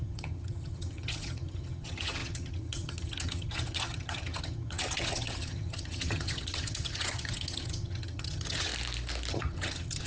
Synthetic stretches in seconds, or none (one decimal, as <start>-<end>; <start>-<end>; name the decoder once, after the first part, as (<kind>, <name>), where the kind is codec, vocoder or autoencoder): 0.0-8.7 (vocoder, HiFi-GAN); 9.3-10.1

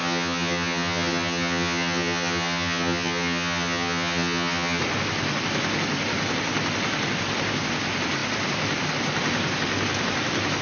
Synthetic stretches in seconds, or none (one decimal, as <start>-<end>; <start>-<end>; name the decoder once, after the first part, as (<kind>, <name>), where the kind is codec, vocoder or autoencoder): 0.0-4.8 (vocoder, HiFi-GAN)

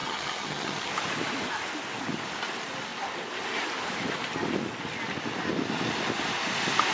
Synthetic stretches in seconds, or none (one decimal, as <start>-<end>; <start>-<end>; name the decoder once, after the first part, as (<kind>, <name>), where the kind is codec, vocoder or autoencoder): 0.0-0.9 (vocoder, HiFi-GAN)

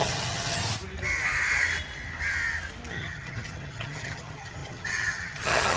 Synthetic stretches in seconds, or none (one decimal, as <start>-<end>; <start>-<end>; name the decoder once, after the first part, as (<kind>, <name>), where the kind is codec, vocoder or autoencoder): 0.0-0.6 (vocoder, HiFi-GAN); 2.9-5.8

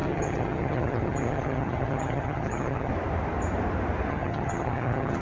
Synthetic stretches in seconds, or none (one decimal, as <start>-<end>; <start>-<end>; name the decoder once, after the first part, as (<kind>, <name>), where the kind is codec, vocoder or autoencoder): 0.0-2.9 (vocoder, HiFi-GAN); 4.1-5.2